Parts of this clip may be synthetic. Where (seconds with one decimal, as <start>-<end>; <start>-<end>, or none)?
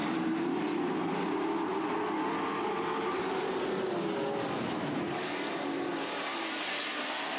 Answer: 0.0-2.0